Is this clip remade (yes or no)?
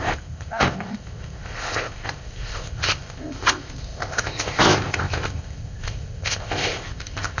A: yes